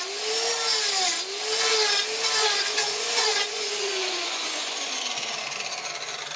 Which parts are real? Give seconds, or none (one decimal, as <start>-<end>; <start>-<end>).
0.0-2.4; 4.9-6.4